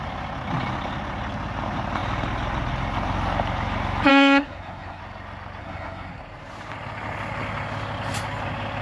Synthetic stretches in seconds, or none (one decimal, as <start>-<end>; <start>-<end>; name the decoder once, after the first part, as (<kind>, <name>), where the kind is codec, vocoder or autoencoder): 4.1-5.0 (codec, SNAC); 5.6-6.2